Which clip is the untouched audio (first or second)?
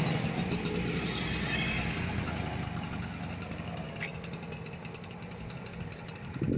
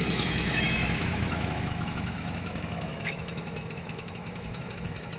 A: first